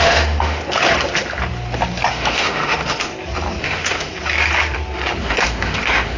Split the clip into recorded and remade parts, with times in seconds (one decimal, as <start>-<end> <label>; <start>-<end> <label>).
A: 0.0-0.6 remade; 0.6-2.1 recorded; 2.1-3.1 remade; 3.1-3.6 recorded; 3.6-4.1 remade; 4.1-5.2 recorded; 5.2-6.2 remade